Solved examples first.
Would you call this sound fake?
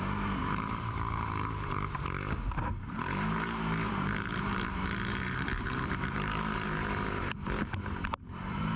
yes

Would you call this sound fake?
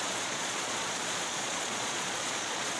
yes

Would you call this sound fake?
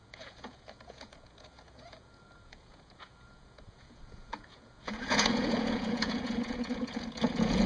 yes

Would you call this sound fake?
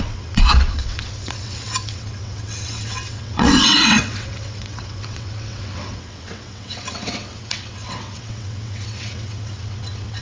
yes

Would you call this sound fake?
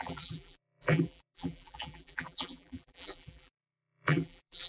yes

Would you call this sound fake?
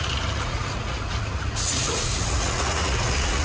yes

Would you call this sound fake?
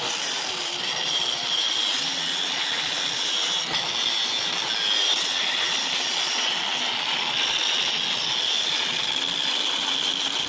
no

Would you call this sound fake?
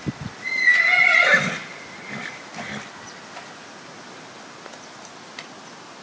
no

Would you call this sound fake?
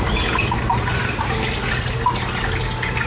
no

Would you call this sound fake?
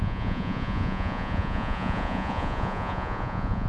yes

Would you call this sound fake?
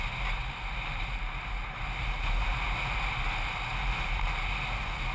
no